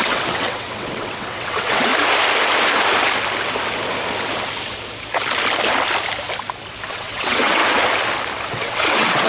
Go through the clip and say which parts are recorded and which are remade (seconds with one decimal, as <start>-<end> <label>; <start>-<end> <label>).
0.0-1.9 remade; 1.9-6.9 recorded; 6.9-7.6 remade; 7.6-8.5 recorded; 8.5-9.3 remade